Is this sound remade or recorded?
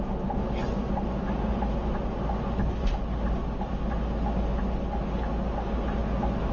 recorded